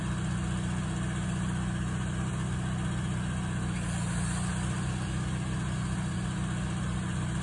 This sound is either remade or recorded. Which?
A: recorded